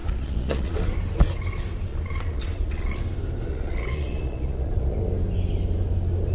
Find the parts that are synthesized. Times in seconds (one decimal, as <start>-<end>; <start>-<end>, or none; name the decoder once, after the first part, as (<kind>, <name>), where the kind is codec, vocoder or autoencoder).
0.0-0.9 (vocoder, Vocos); 1.9-3.0; 3.5-5.0